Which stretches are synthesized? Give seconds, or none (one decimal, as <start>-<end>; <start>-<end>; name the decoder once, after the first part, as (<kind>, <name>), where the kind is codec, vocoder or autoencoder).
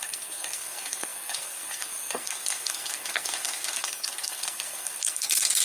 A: 0.0-5.6 (codec, SNAC)